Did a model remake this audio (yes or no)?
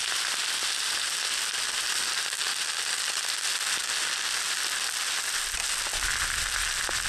no